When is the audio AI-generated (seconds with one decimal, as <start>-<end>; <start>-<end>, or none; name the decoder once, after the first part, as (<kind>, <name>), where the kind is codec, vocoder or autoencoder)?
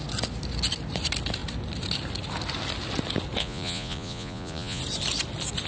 3.4-4.8 (vocoder, Vocos)